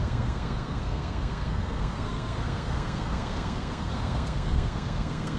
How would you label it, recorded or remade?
remade